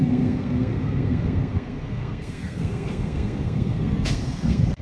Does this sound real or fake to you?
fake